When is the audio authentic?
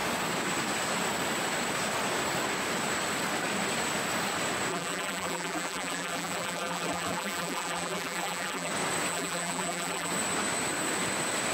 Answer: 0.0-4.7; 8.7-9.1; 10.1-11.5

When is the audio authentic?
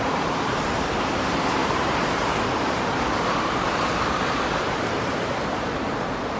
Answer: none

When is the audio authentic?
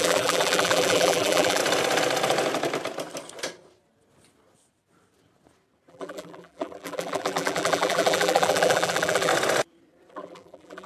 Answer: 1.6-5.9; 9.3-10.1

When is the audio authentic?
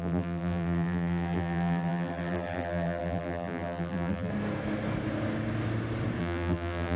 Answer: 4.3-6.2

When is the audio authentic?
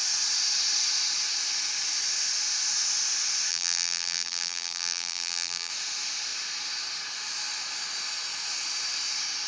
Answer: 0.0-3.5; 5.7-9.5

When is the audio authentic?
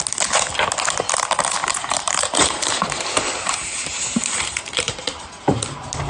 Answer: 0.0-1.6; 5.3-6.1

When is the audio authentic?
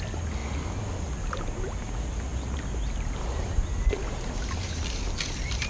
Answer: 0.0-5.7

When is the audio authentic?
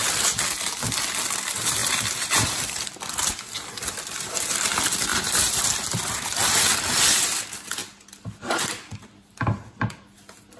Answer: 0.0-1.8; 3.3-5.1; 6.7-10.6